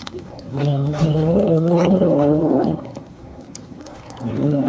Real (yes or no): no